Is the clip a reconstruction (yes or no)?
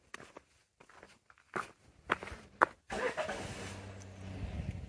no